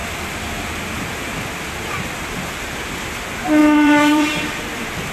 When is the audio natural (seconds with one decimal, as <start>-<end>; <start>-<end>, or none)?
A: 3.1-3.6